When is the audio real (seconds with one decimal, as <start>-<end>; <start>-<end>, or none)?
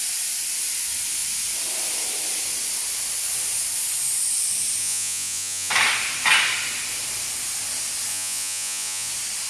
0.0-4.8; 5.7-8.1; 9.1-9.5